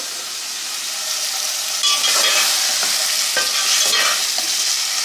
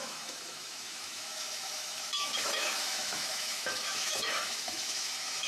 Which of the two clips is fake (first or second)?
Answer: second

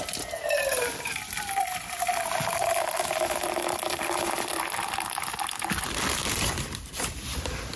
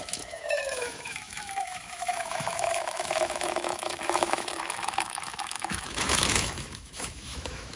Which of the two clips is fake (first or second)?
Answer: second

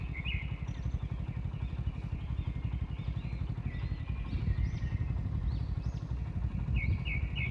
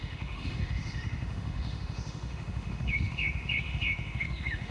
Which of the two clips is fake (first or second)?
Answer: second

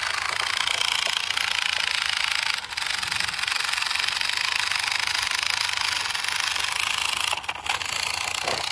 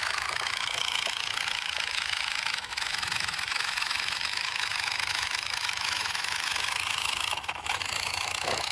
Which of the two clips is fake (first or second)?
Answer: second